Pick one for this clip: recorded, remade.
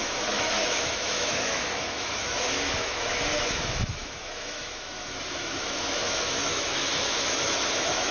remade